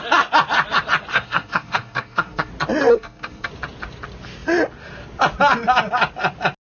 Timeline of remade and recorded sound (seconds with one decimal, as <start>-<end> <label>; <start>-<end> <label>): 0.0-1.1 recorded; 1.1-2.5 remade; 2.5-2.9 recorded; 2.9-3.5 remade; 3.5-6.6 recorded